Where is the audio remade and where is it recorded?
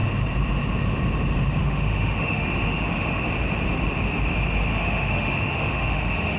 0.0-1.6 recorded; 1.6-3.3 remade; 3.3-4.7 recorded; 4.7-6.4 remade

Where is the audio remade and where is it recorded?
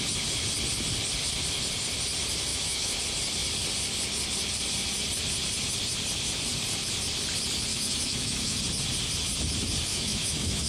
0.0-2.5 recorded; 2.5-3.0 remade; 3.0-7.7 recorded; 7.7-8.6 remade; 8.6-9.9 recorded; 9.9-10.7 remade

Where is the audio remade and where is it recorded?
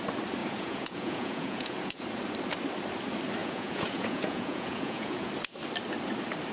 0.0-0.4 recorded; 0.4-2.0 remade; 2.0-3.4 recorded; 3.4-5.3 remade; 5.3-6.5 recorded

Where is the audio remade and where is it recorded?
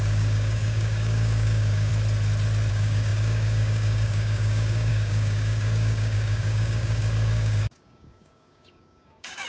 0.0-1.9 remade; 1.9-2.7 recorded; 2.7-9.5 remade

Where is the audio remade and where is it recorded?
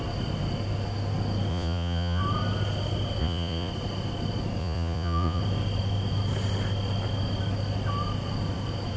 0.0-1.5 recorded; 1.5-2.2 remade; 2.2-3.2 recorded; 3.2-3.7 remade; 3.7-4.6 recorded; 4.6-5.4 remade; 5.4-9.0 recorded